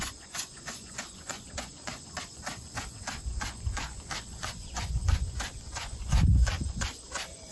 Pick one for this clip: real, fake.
fake